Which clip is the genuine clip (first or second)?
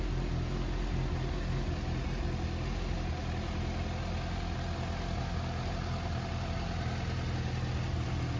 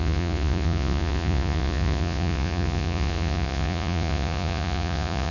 first